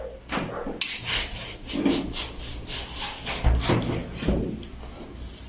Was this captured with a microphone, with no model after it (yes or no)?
yes